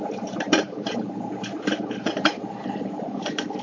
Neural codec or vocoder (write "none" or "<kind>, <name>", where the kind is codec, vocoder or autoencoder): vocoder, BigVGAN v2